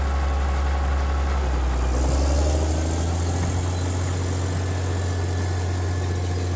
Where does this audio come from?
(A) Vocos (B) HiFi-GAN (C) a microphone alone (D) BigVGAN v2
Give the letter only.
C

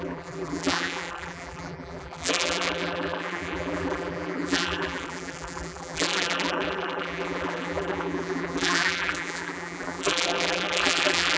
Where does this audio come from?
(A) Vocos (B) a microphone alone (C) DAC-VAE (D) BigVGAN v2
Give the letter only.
D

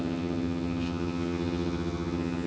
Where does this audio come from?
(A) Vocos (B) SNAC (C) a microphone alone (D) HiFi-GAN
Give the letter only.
D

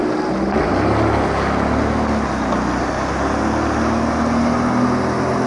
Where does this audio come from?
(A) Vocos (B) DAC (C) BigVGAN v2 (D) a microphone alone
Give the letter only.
D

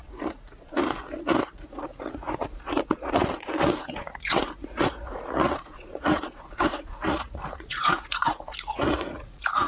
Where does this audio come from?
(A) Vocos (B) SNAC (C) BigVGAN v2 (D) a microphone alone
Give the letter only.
A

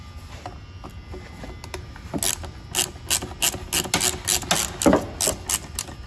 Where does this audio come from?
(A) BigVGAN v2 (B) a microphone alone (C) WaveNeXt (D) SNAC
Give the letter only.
B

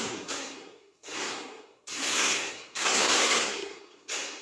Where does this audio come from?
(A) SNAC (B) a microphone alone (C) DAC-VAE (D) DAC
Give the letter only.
A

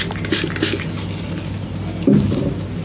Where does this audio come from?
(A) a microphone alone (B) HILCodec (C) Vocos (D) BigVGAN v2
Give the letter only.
A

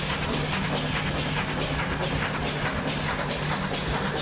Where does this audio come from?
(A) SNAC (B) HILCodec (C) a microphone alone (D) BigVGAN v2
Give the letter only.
C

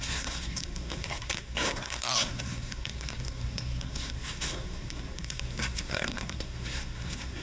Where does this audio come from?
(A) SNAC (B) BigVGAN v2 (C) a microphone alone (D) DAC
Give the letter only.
A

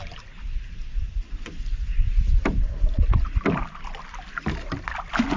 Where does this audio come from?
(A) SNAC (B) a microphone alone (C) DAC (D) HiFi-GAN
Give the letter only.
B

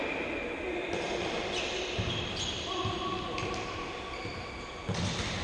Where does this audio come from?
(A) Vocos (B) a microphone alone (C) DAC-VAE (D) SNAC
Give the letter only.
B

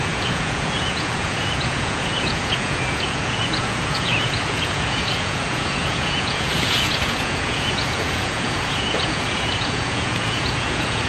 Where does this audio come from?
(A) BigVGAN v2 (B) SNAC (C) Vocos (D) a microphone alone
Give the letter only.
C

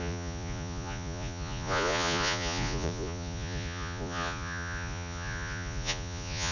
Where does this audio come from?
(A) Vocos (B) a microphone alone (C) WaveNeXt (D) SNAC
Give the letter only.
A